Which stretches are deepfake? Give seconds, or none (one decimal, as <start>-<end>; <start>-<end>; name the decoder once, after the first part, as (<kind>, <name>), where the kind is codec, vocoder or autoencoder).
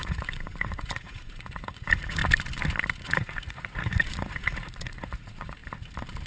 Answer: 0.0-2.2 (vocoder, Vocos); 3.0-5.6